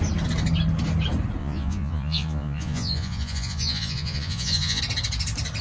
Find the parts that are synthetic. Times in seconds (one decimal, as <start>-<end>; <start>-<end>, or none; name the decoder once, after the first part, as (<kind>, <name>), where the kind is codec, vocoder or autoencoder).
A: 1.4-4.8 (vocoder, Vocos)